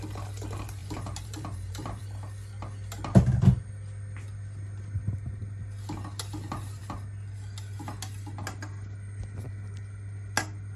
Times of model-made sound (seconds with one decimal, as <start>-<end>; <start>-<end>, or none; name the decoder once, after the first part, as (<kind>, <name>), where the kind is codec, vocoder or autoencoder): 0.8-2.0 (vocoder, BigVGAN v2)